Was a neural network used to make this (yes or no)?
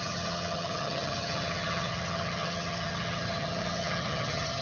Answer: yes